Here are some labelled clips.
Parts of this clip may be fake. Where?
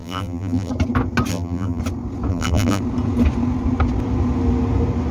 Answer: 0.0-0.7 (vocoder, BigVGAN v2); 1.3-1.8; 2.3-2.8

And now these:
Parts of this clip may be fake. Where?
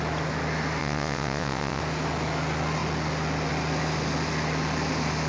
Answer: 0.8-1.8 (vocoder, WaveNeXt)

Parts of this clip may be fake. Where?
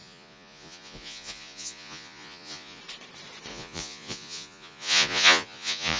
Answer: 0.0-2.8 (vocoder, Vocos); 3.5-6.0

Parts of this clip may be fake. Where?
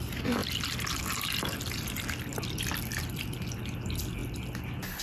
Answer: none